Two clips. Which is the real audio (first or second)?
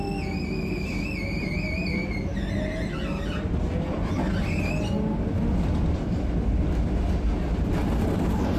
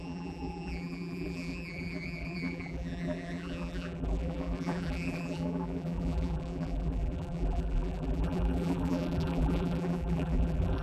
first